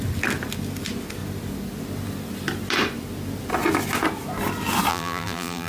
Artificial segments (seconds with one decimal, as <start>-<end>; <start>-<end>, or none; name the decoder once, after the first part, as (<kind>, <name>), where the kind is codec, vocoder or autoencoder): 4.9-5.7 (vocoder, BigVGAN v2)